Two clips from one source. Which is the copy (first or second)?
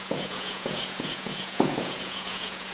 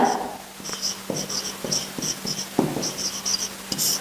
first